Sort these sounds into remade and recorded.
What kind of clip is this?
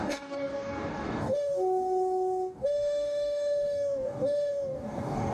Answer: remade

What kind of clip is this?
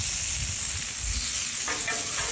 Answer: recorded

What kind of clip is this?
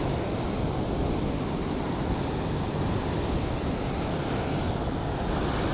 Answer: recorded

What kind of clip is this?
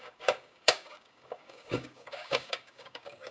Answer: remade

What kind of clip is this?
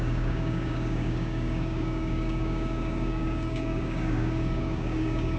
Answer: remade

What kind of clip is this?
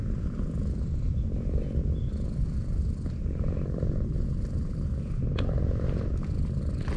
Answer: recorded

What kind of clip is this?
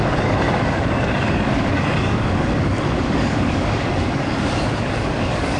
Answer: remade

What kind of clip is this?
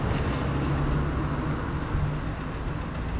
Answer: recorded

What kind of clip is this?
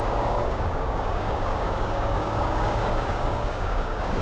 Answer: remade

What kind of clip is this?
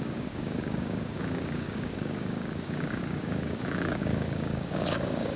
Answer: remade